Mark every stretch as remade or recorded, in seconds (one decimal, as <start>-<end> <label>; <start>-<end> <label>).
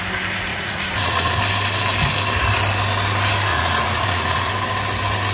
0.0-0.5 recorded; 0.5-1.4 remade; 1.4-3.5 recorded; 3.5-4.5 remade; 4.5-5.3 recorded